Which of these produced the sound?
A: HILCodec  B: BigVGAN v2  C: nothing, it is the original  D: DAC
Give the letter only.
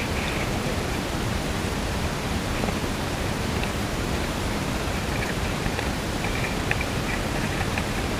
B